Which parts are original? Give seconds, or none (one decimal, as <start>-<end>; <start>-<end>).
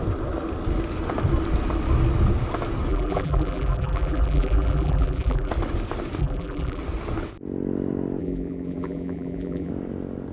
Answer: 0.0-2.9; 5.5-6.2; 6.8-8.2; 9.7-10.3